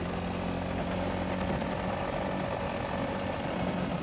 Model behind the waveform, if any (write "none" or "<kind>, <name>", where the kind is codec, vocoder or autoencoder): none